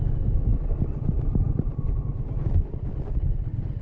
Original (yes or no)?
yes